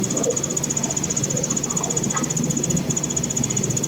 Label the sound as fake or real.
real